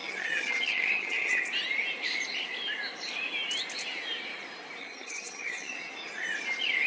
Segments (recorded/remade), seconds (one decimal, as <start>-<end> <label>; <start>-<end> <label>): 0.0-1.4 remade; 1.4-4.8 recorded; 4.8-5.9 remade; 5.9-6.9 recorded